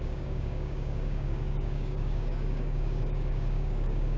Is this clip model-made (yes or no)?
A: yes